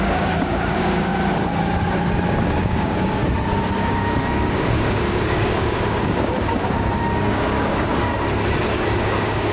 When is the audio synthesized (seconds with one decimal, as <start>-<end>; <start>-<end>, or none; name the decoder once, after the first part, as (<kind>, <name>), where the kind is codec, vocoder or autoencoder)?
0.0-1.1 (codec, DAC); 2.6-3.2; 3.9-8.1; 9.0-9.5